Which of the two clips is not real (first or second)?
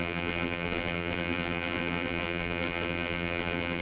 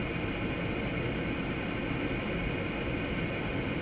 first